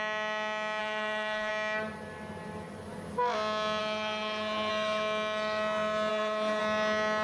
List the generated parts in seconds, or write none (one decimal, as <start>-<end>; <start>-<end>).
0.8-1.5; 3.8-4.7; 6.1-6.6